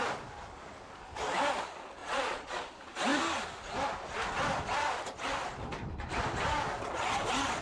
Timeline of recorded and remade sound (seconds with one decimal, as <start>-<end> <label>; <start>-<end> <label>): 0.0-2.0 recorded; 2.0-2.7 remade; 2.7-7.6 recorded